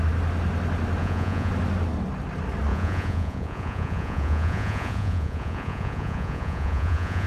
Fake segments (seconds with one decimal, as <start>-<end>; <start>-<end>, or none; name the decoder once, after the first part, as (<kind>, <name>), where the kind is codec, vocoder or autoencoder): 1.0-1.5 (vocoder, Vocos); 2.7-7.3